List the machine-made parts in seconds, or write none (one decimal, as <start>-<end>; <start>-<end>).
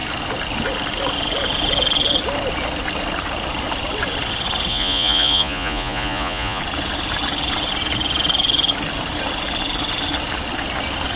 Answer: 4.7-6.6